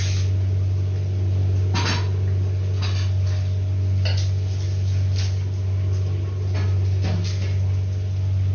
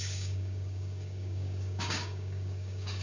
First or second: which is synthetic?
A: second